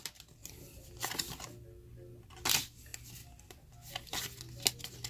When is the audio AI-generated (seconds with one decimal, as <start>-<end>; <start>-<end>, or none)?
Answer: none

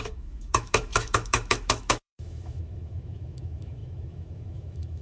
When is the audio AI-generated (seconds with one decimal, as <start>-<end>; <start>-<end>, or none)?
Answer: 0.0-5.0

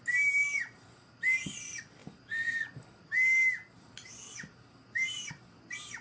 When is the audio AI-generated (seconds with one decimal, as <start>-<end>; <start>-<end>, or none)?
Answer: none

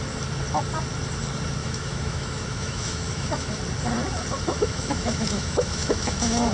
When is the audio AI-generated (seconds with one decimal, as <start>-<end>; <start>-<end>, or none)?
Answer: 1.6-3.6; 4.5-6.5

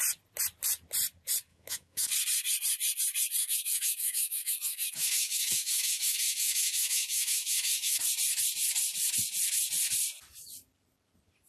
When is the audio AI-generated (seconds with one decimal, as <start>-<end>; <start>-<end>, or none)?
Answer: 1.5-2.1; 3.4-8.0

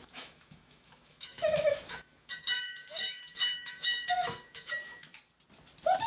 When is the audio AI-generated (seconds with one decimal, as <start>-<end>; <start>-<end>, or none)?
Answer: 0.0-5.1

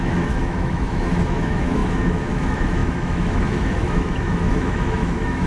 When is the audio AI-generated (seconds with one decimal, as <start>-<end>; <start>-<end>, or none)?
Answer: 0.0-5.5